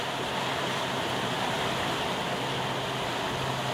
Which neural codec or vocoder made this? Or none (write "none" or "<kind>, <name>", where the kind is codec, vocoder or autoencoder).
none